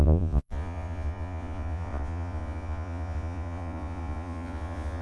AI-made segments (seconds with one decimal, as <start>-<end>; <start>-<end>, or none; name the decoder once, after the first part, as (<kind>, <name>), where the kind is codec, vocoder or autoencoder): 0.0-5.0 (vocoder, Vocos)